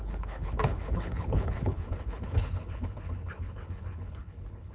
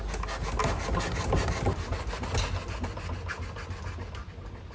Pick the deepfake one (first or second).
first